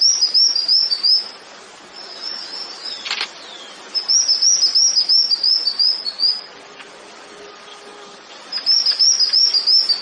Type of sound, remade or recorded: recorded